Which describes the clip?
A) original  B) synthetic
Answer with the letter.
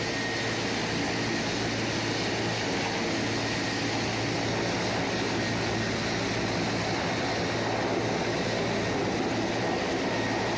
A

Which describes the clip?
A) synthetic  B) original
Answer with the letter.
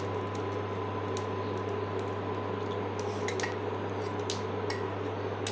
B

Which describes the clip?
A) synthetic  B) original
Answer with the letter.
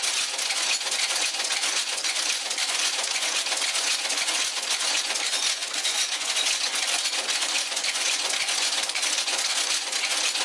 A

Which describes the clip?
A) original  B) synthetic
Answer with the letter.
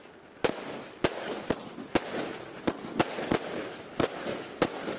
A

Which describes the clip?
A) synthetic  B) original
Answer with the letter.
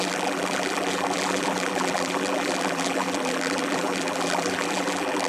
A